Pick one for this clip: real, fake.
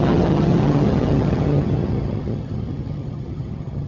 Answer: fake